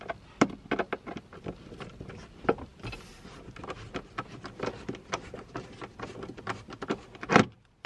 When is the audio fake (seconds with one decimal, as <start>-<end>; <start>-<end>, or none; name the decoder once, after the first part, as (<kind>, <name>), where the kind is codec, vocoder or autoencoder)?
none